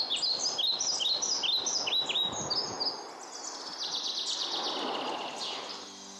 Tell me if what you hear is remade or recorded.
recorded